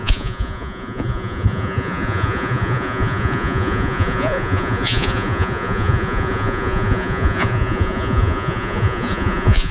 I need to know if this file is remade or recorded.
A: remade